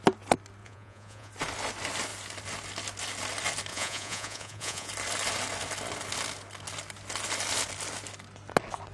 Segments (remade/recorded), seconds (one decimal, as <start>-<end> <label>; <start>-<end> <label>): 0.0-0.6 recorded; 0.6-1.3 remade; 1.3-3.7 recorded; 3.7-4.9 remade; 4.9-8.9 recorded